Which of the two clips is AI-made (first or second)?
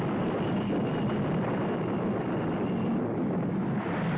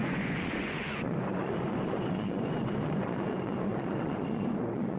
second